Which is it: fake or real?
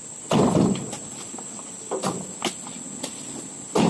real